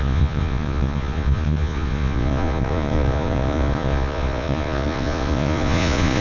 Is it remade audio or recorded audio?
remade